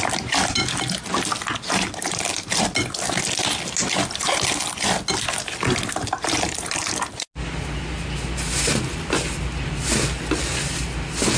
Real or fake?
real